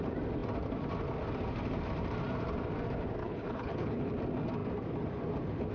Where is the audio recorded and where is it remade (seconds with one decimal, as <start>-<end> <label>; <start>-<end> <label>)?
0.0-3.2 recorded; 3.2-4.1 remade; 4.1-5.7 recorded